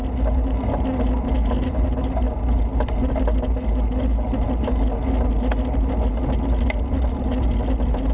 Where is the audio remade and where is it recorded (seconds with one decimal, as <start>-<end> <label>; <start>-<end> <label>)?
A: 0.0-8.1 recorded